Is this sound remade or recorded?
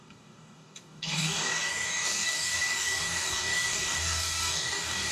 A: remade